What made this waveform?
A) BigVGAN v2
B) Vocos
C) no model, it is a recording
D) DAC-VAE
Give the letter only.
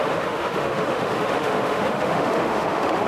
D